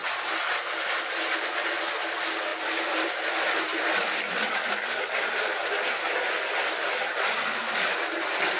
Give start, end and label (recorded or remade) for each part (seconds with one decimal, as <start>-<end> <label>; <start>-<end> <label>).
0.0-8.6 recorded